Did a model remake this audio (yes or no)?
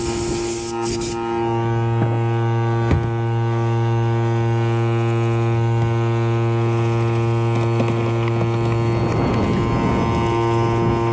no